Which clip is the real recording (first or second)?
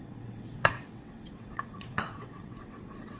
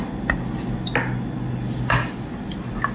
second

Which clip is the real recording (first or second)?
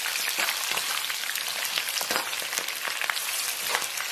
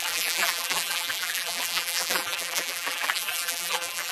first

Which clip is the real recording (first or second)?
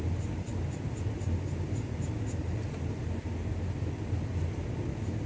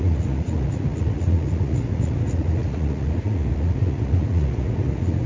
first